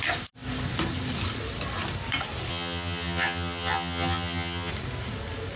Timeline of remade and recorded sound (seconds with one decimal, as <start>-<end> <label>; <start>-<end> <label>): 0.0-2.5 recorded; 2.5-4.7 remade; 4.7-5.6 recorded